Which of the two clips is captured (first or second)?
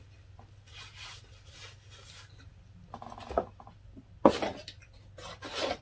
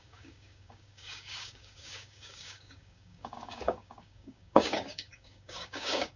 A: first